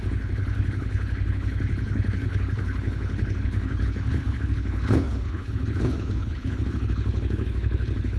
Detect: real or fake fake